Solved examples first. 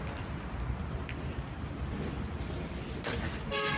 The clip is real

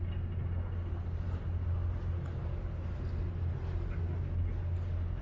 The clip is real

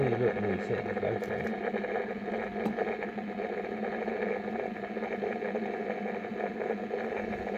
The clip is real